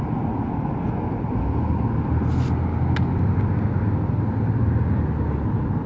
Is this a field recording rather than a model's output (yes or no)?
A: yes